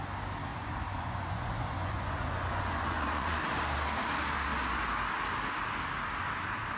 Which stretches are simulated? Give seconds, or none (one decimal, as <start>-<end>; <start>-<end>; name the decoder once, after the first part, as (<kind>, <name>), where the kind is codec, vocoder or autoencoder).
0.5-3.4 (vocoder, Vocos)

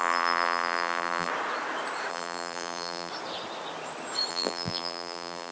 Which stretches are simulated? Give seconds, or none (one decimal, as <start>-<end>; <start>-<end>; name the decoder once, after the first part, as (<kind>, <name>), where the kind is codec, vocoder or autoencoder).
0.0-1.3 (vocoder, BigVGAN v2); 2.1-3.1; 4.3-5.5

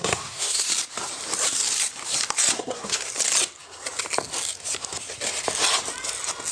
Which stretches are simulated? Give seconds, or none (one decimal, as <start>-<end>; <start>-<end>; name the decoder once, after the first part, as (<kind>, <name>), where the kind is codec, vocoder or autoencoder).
0.0-0.7 (codec, SNAC); 2.5-3.1

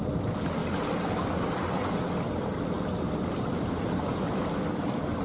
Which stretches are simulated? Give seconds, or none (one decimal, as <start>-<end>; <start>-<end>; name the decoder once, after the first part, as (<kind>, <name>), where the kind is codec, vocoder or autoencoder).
none

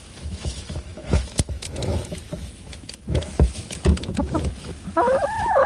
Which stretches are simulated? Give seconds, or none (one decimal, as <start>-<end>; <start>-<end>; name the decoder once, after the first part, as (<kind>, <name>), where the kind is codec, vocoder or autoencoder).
0.0-5.7 (autoencoder, DAC-VAE)

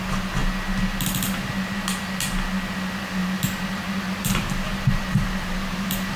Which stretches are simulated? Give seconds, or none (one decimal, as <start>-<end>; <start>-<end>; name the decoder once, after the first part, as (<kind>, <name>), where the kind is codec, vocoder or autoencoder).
3.2-6.2 (vocoder, BigVGAN v2)

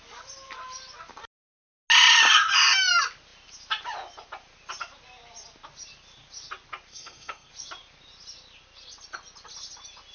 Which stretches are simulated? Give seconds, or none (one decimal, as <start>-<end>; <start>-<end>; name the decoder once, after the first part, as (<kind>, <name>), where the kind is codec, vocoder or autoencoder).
6.9-7.5 (codec, SNAC)

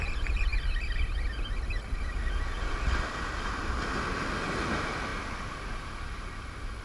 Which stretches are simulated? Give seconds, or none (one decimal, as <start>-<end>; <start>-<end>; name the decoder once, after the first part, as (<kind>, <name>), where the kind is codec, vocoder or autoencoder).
none